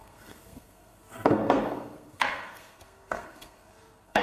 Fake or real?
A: fake